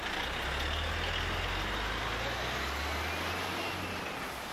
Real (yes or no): yes